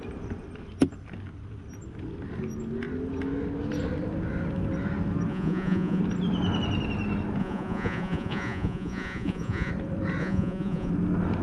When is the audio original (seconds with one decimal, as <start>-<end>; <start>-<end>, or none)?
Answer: 0.0-5.3; 6.0-7.4; 9.7-10.2; 10.9-11.4